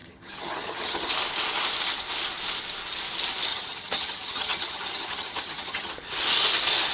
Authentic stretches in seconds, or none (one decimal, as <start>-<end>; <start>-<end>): 1.1-3.5; 5.9-6.9